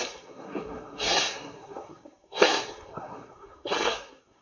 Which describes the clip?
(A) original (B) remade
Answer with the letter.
B